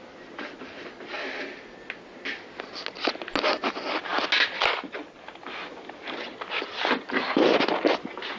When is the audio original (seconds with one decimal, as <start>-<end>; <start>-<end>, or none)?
0.0-8.4